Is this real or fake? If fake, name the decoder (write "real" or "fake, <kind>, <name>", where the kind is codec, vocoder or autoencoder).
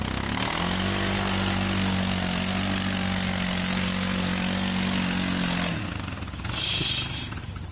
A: real